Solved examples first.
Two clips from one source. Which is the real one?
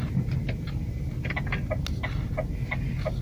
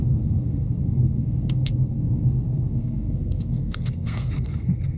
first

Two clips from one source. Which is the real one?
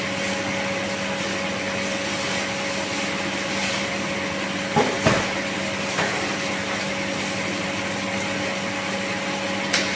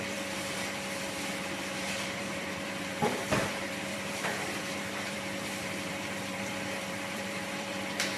first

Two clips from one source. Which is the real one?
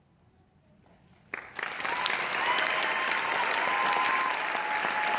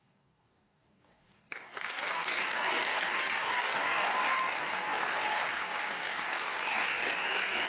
first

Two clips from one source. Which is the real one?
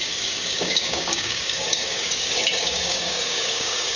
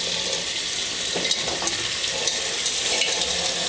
second